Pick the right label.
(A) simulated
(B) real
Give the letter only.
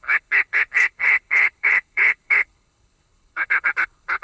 A